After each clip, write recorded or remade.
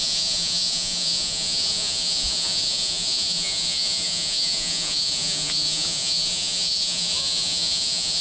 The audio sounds remade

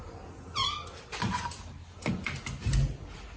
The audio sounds recorded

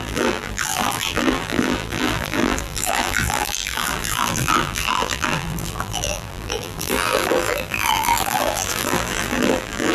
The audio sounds remade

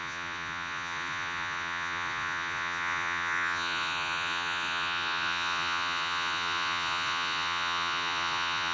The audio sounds remade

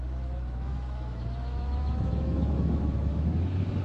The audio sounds remade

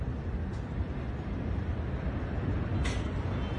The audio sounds recorded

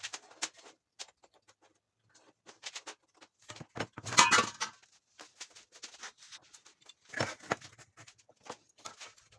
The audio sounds recorded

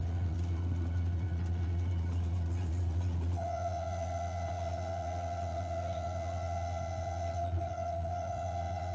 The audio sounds remade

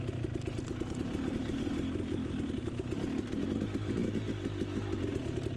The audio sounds recorded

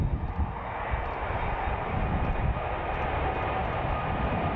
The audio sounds recorded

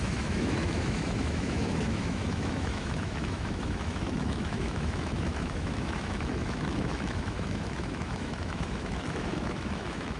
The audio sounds remade